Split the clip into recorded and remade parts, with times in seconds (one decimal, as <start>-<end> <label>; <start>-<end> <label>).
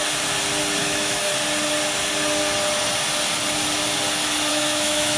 0.0-0.8 recorded; 0.8-1.3 remade; 1.3-4.5 recorded; 4.5-5.2 remade